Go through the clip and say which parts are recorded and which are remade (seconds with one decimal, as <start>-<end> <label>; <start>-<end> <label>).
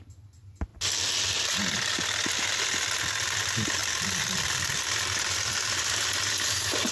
0.0-3.8 recorded; 3.8-6.0 remade; 6.0-6.9 recorded